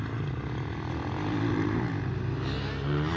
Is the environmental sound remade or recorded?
recorded